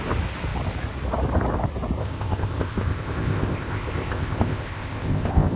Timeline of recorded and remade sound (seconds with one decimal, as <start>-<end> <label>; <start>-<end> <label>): 0.0-2.0 recorded; 2.0-5.6 remade